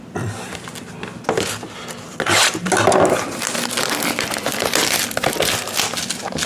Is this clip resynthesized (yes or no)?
no